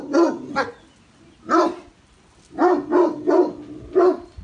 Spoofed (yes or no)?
no